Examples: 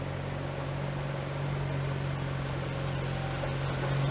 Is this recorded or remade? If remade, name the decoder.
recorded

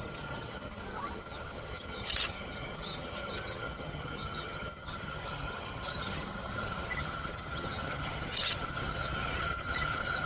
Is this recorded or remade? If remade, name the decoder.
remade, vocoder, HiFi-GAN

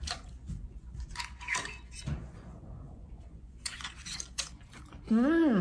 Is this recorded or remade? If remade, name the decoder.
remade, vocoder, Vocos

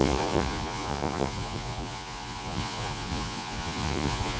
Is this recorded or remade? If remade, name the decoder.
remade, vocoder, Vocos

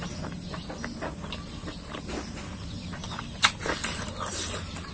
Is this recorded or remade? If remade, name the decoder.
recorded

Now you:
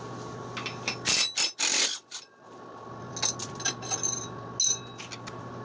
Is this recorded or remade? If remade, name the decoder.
recorded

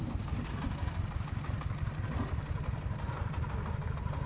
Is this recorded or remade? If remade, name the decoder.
recorded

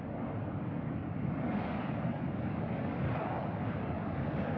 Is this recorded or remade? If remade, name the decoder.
remade, codec, DAC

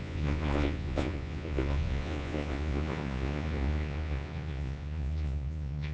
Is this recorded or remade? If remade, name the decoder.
remade, vocoder, Vocos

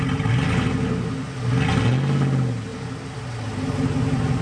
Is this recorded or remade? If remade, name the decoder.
recorded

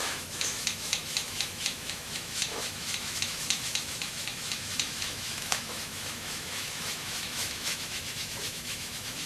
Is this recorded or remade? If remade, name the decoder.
remade, autoencoder, DAC-VAE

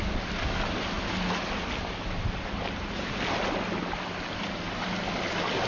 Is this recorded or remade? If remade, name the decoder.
recorded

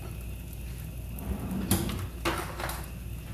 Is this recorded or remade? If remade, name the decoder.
recorded